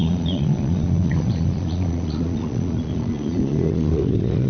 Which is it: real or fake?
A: fake